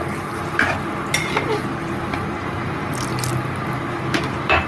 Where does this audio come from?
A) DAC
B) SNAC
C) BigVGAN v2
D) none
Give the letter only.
D